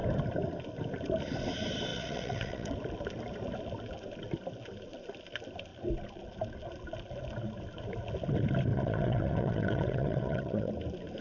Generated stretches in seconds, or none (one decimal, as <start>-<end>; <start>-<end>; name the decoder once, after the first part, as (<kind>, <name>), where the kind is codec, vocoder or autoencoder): 1.9-2.7 (vocoder, WaveNeXt); 8.7-10.7